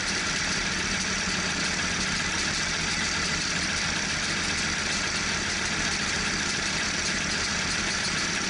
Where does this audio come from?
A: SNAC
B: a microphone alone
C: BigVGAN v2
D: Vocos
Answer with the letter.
B